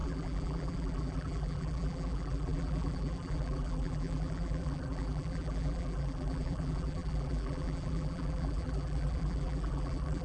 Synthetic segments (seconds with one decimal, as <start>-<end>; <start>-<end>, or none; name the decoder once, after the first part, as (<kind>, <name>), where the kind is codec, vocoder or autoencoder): 0.0-10.2 (vocoder, BigVGAN v2)